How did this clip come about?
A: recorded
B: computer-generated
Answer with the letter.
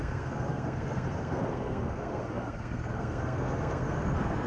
B